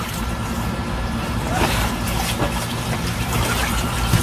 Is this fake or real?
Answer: fake